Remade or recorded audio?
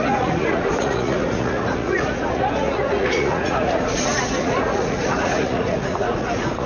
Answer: remade